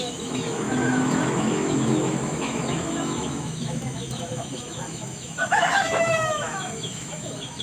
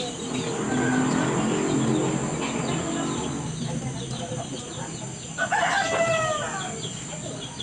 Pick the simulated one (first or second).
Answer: first